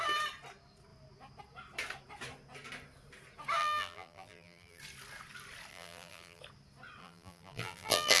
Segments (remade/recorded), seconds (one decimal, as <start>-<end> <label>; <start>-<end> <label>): 0.0-3.6 recorded; 3.6-4.8 remade; 4.8-5.7 recorded; 5.7-6.4 remade; 6.4-7.0 recorded; 7.0-8.2 remade